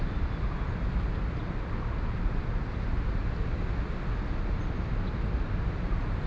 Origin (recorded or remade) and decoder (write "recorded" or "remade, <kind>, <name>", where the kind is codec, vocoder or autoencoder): recorded